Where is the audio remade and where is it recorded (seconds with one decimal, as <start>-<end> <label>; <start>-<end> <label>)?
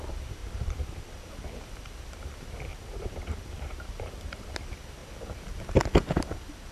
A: 0.0-0.4 recorded; 0.4-1.3 remade; 1.3-2.7 recorded; 2.7-4.6 remade; 4.6-6.7 recorded